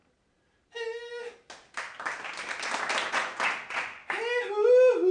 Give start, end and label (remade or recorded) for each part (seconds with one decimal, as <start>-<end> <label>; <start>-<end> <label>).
0.0-3.1 recorded; 3.1-4.0 remade; 4.0-5.1 recorded